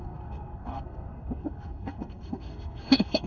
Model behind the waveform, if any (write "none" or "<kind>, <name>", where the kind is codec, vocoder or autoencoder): codec, SNAC